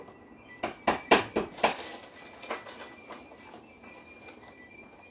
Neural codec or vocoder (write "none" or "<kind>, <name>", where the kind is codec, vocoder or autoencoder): none